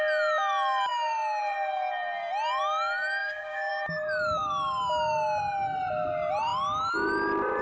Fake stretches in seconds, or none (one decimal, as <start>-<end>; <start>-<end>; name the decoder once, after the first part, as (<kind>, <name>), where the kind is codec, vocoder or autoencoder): 3.2-3.7 (codec, DAC)